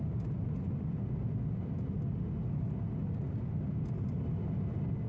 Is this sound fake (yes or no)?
no